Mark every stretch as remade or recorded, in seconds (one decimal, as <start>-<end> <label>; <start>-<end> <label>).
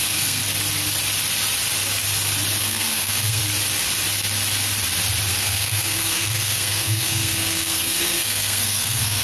0.0-0.4 remade; 0.4-2.6 recorded; 2.6-3.4 remade; 3.4-5.3 recorded; 5.3-9.2 remade